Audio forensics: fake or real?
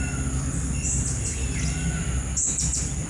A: real